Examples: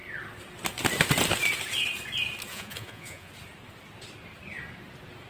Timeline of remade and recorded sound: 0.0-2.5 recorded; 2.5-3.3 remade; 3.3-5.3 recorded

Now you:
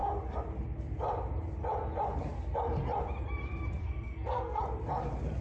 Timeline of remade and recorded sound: 0.0-3.8 recorded; 3.8-4.6 remade; 4.6-5.4 recorded

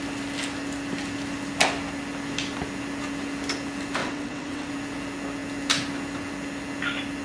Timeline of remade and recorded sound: 0.0-4.0 recorded; 4.0-4.7 remade; 4.7-7.2 recorded

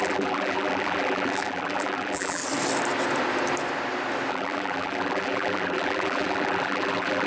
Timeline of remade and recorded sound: 0.0-2.4 remade; 2.4-4.3 recorded; 4.3-7.3 remade

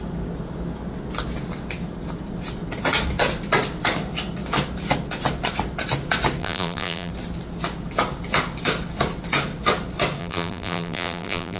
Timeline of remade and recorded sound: 0.0-6.4 recorded; 6.4-7.1 remade; 7.1-10.2 recorded; 10.2-11.6 remade

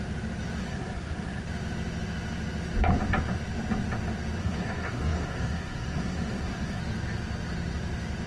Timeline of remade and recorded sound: 0.0-0.6 recorded; 0.6-1.4 remade; 1.4-4.4 recorded; 4.4-6.8 remade; 6.8-8.3 recorded

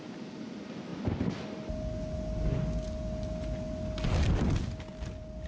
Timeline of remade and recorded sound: 0.0-5.5 recorded